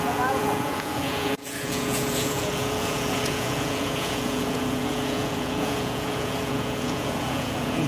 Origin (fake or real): fake